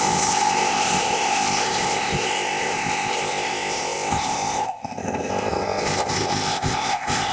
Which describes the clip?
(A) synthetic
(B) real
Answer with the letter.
A